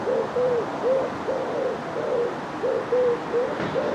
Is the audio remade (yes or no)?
no